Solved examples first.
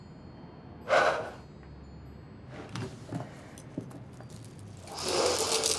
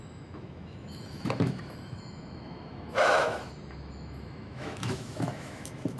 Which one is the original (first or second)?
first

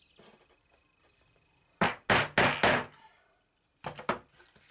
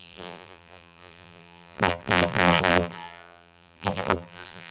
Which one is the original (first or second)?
first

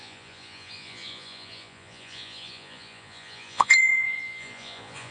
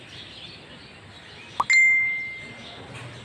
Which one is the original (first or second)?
second